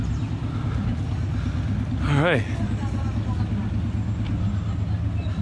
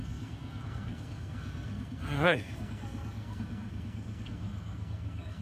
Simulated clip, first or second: second